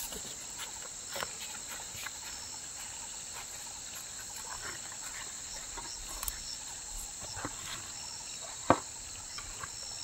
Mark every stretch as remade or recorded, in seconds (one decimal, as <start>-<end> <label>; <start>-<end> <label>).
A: 0.0-10.0 recorded